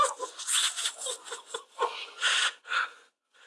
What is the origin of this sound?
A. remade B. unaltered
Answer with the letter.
A